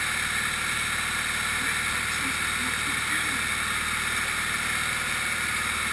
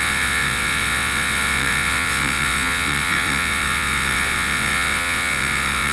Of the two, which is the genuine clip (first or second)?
first